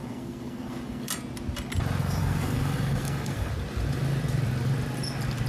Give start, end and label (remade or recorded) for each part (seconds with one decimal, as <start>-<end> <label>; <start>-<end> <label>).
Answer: 0.0-1.1 remade; 1.1-2.0 recorded; 2.0-3.5 remade; 3.5-5.5 recorded